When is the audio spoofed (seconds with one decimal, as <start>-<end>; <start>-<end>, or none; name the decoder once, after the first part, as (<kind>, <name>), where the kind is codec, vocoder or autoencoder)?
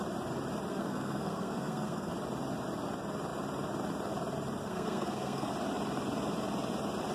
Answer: 0.7-2.1 (codec, SNAC); 4.6-5.5